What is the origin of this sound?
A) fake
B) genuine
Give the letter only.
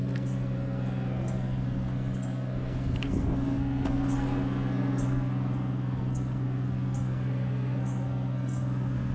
A